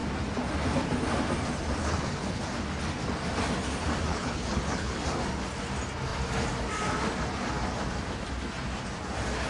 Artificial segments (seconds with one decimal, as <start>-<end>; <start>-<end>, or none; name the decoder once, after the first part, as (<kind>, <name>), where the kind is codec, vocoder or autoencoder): 1.8-2.4 (codec, HILCodec); 4.1-5.0